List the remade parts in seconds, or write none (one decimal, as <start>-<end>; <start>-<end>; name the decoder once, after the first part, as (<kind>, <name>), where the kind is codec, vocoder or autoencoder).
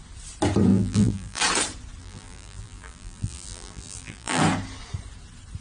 0.7-1.4 (vocoder, BigVGAN v2); 2.0-4.4